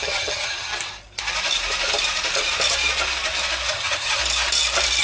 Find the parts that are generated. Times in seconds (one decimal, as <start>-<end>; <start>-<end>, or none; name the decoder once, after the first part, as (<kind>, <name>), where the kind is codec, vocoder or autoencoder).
0.0-0.7 (vocoder, HiFi-GAN); 3.7-4.2